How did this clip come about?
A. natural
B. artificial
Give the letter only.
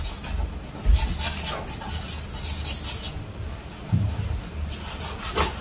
A